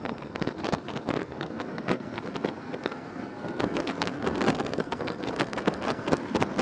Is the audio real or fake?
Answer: fake